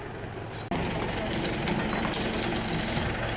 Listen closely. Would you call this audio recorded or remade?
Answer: recorded